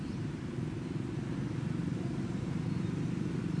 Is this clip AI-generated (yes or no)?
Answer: yes